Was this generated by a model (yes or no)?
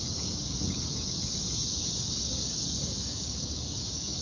yes